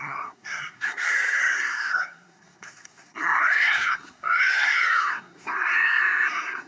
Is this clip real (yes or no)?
no